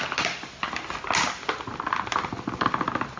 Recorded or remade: recorded